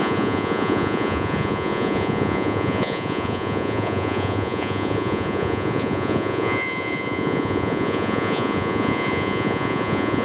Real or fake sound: fake